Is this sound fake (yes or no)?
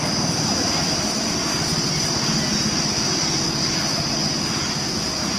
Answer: no